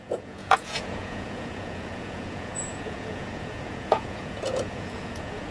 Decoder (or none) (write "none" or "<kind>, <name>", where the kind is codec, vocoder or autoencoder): vocoder, Vocos